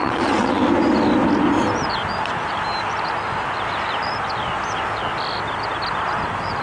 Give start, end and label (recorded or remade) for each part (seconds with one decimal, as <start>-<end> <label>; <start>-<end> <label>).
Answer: 0.0-0.6 remade; 0.6-6.6 recorded